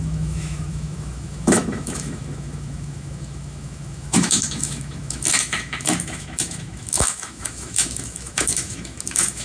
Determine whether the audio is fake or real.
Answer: fake